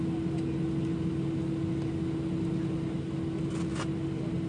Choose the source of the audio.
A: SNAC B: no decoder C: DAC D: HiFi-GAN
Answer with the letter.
B